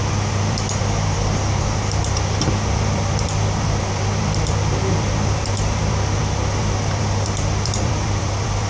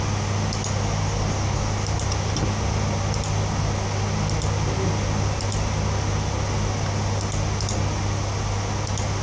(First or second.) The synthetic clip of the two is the first